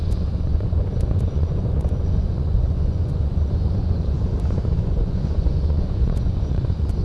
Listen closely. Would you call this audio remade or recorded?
remade